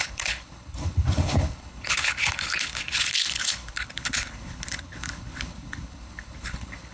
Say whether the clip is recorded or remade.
remade